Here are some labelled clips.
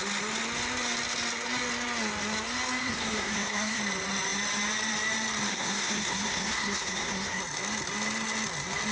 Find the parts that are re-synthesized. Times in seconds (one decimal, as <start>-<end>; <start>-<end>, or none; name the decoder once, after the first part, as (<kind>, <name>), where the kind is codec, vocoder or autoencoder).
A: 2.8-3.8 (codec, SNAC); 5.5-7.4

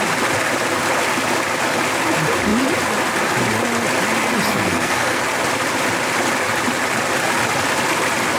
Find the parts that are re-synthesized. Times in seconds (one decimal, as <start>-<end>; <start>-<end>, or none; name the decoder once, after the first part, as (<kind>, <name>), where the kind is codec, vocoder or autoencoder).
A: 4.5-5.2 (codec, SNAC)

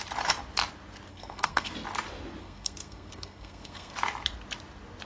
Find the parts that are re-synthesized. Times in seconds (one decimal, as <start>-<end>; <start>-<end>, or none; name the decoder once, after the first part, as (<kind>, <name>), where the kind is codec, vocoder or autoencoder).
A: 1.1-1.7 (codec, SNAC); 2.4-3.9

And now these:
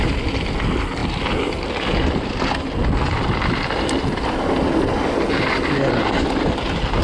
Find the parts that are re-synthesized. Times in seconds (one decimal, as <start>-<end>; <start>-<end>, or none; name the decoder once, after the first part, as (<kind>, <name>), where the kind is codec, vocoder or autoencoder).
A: none

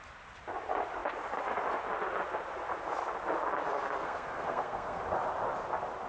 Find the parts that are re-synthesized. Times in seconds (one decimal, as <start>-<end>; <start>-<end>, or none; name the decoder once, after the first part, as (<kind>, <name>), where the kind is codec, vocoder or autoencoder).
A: 4.0-5.0 (codec, SNAC)

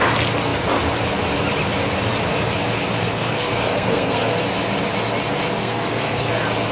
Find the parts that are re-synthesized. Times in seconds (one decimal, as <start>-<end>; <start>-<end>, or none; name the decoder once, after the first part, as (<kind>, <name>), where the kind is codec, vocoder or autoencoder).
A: 3.0-4.4 (codec, SNAC); 5.6-6.3